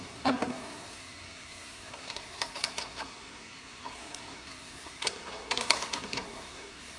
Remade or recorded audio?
remade